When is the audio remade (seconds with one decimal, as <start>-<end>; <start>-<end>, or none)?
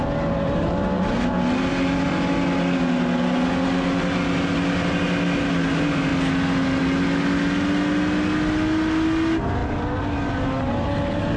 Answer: none